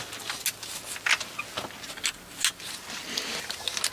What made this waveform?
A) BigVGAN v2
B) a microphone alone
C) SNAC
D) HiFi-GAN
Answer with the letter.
B